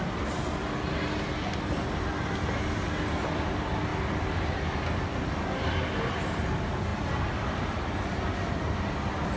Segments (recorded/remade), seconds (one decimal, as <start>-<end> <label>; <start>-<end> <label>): 0.0-9.4 recorded